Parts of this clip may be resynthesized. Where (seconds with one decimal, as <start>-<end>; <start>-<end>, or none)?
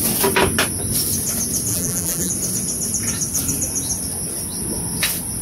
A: 1.7-2.3